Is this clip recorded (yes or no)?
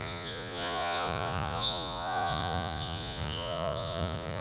no